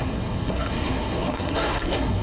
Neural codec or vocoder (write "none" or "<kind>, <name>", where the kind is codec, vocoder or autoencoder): codec, SNAC